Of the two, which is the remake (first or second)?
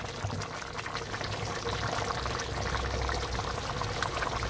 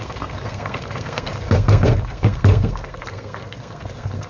second